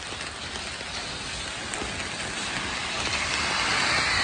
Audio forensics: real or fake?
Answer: real